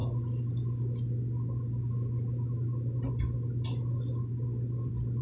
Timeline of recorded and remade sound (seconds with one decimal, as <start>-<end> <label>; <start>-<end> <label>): 0.0-5.2 recorded